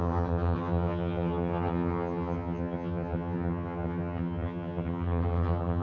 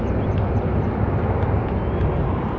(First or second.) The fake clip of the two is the first